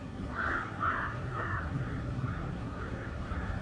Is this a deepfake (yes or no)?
yes